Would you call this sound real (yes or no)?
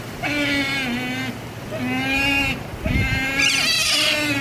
yes